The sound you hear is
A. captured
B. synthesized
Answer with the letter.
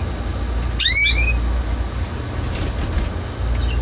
A